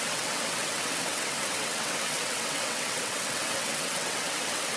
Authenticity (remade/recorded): remade